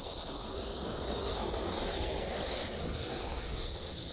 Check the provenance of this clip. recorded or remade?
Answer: remade